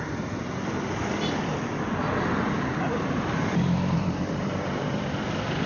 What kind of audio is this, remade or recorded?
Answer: remade